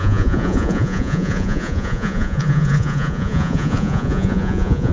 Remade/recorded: remade